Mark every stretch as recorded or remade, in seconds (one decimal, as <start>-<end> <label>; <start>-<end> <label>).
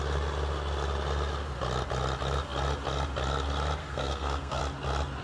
0.0-3.8 recorded; 3.8-4.6 remade; 4.6-5.2 recorded